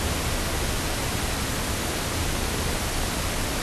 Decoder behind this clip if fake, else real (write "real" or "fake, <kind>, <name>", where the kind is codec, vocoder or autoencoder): real